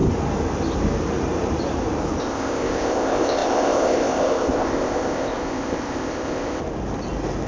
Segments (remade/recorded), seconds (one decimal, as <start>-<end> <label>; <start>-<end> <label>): 0.0-2.2 recorded; 2.2-6.6 remade; 6.6-7.5 recorded